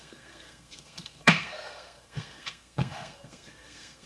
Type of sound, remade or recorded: remade